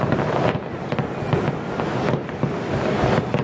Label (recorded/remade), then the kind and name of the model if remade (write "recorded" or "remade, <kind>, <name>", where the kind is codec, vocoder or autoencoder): recorded